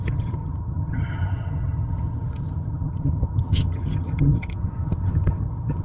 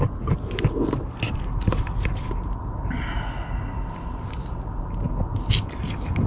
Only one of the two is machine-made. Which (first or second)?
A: first